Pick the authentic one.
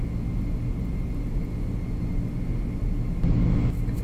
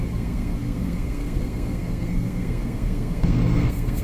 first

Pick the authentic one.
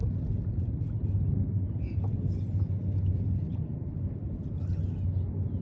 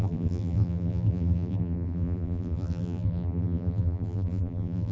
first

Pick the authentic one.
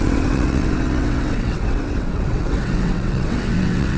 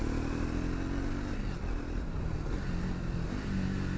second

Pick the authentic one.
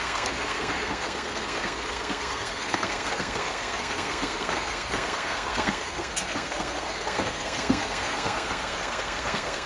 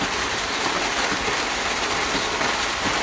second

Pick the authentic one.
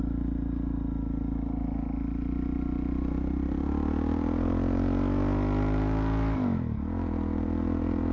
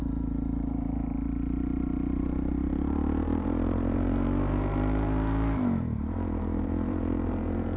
first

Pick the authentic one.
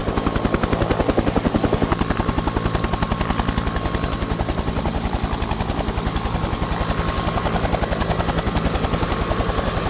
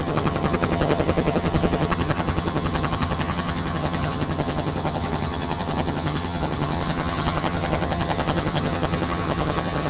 first